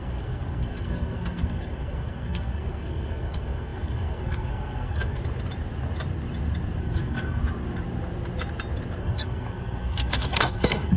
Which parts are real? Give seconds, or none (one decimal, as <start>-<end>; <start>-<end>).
5.2-6.8; 7.4-9.0